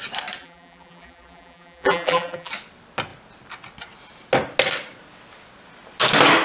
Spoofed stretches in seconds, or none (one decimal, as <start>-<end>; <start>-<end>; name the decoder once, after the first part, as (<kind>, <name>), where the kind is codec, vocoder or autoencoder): 0.4-2.5 (vocoder, BigVGAN v2)